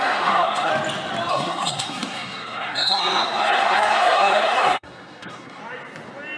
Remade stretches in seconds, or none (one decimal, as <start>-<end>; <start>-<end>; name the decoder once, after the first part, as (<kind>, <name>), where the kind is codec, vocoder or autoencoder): 0.0-0.7 (codec, SNAC); 1.3-5.6